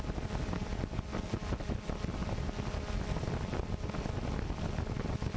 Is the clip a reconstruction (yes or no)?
no